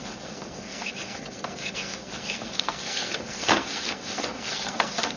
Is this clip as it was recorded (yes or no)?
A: no